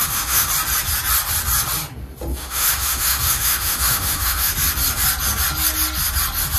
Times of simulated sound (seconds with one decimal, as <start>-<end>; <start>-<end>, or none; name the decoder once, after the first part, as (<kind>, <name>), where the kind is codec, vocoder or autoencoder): 0.0-0.5 (autoencoder, DAC-VAE); 2.3-4.5